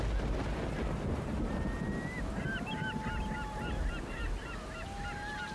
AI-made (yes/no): no